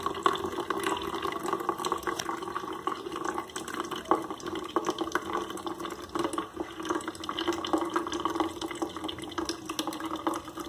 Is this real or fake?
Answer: real